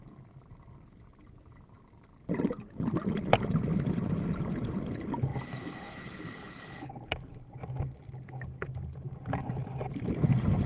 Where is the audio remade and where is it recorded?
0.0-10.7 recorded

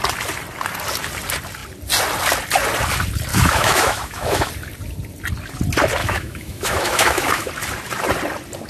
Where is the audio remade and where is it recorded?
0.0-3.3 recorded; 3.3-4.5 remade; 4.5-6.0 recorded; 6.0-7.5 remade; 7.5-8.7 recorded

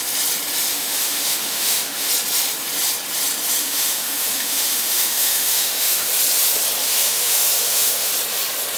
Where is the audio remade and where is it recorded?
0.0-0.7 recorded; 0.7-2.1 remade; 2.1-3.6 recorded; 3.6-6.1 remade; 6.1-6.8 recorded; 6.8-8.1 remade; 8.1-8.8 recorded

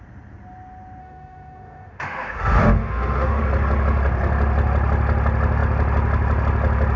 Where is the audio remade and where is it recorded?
0.0-1.0 recorded; 1.0-3.4 remade; 3.4-7.0 recorded

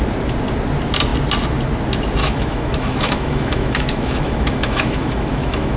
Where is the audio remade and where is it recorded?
0.0-2.2 recorded; 2.2-5.8 remade